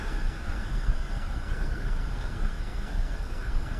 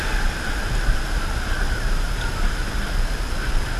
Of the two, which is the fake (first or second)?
first